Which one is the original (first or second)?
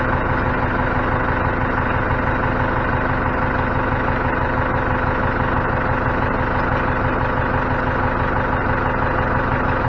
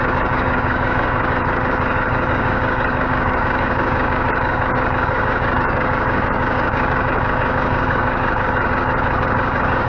first